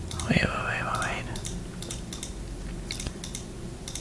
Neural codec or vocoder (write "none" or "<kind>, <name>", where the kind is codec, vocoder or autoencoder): none